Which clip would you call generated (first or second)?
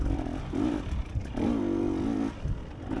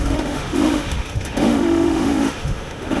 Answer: second